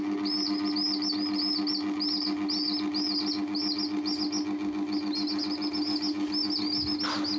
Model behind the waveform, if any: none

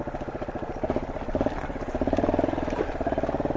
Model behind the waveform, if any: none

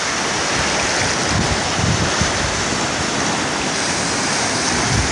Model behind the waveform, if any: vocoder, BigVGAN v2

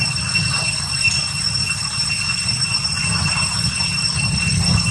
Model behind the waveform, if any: none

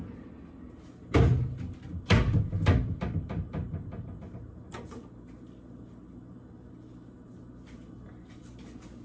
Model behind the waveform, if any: none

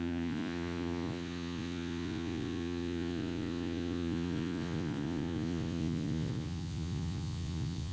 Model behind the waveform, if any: vocoder, Vocos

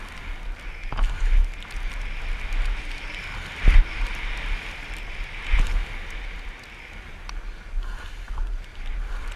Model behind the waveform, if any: none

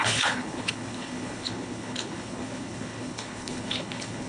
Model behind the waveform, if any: codec, HILCodec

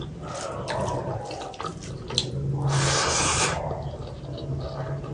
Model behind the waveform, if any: none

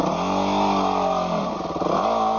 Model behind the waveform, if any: none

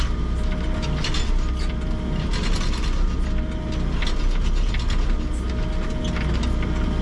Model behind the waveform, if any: none